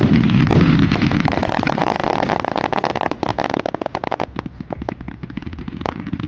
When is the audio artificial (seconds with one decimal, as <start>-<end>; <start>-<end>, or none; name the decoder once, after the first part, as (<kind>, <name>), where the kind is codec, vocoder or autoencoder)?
0.0-0.5 (vocoder, Vocos); 1.2-2.0; 2.9-3.3; 5.4-6.3